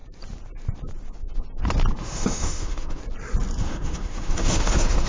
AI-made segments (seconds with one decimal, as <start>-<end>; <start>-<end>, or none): 2.0-3.0; 3.6-5.1

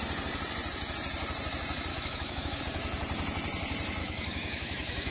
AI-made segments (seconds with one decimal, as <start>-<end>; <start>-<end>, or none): 1.9-2.6; 4.0-5.1